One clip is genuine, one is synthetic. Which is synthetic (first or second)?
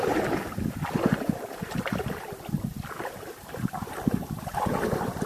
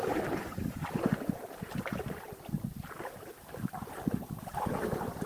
second